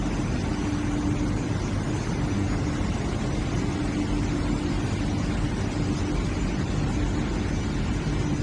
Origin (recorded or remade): recorded